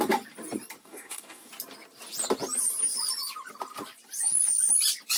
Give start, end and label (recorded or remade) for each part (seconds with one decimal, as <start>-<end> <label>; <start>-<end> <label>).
0.0-0.8 recorded; 0.8-1.5 remade; 1.5-5.2 recorded